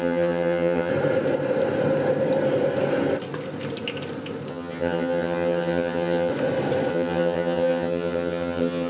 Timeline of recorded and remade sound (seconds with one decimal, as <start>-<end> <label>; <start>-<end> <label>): 0.0-0.9 remade; 0.9-4.5 recorded; 4.5-6.3 remade; 6.3-6.9 recorded; 6.9-8.9 remade